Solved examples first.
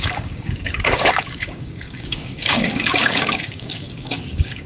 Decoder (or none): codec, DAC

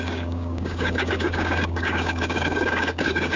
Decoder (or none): codec, DAC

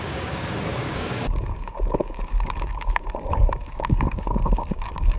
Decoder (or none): codec, DAC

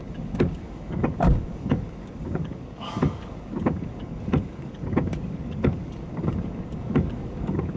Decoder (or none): codec, DAC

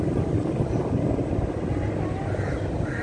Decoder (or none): none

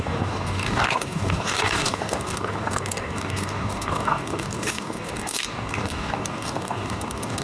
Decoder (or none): codec, DAC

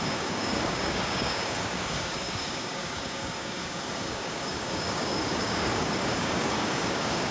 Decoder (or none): codec, DAC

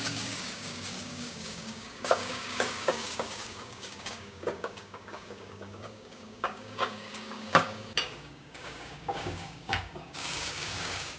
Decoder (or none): codec, DAC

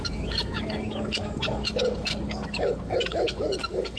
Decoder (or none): codec, DAC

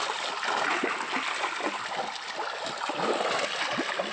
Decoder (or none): none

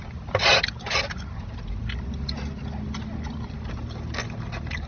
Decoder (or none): none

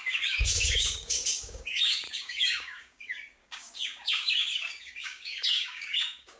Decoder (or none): codec, DAC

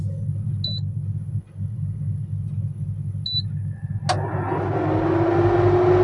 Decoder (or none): none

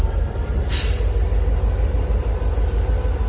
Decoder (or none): none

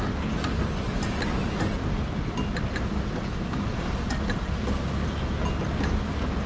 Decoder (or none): none